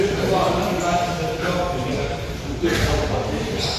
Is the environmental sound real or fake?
real